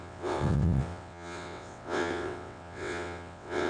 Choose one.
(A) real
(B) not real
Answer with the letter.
B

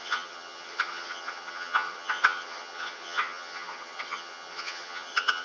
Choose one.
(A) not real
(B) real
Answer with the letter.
A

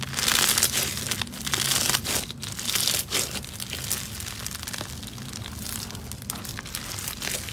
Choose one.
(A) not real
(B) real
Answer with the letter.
B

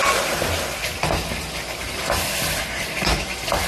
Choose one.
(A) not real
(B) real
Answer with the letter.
B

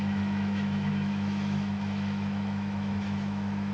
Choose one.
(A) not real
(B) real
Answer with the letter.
A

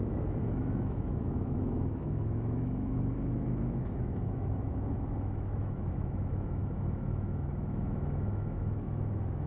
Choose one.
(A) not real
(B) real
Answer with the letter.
A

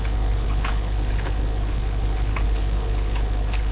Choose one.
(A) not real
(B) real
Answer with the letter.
A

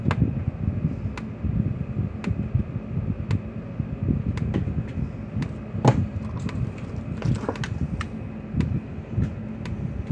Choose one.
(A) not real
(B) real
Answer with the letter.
B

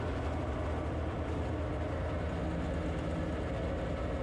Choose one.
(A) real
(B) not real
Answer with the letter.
A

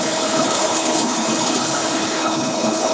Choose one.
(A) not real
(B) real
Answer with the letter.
A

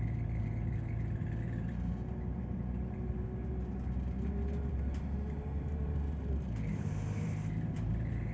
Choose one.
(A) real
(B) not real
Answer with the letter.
B